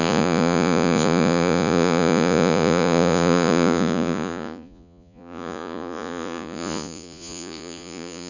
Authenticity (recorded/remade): remade